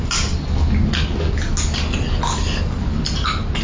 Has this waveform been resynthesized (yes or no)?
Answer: no